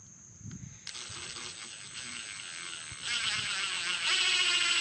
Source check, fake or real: real